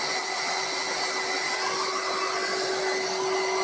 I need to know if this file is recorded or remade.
recorded